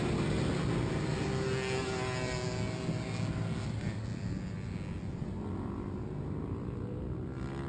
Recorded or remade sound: recorded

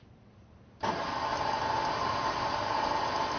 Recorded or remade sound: recorded